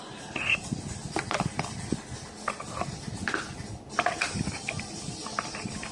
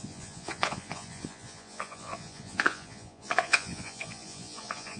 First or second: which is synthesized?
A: second